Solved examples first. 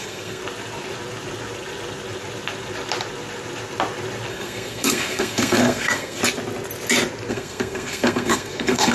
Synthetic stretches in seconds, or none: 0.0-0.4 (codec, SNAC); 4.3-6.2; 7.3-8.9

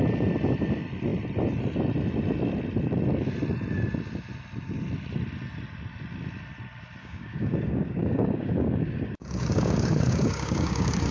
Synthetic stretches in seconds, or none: 7.0-11.1 (codec, DAC)